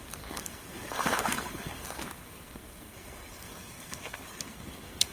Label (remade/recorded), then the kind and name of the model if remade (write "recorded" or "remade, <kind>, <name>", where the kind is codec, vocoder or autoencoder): remade, codec, SNAC